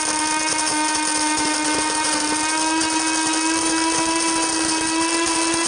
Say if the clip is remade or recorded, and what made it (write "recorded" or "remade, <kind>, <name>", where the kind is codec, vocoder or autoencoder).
recorded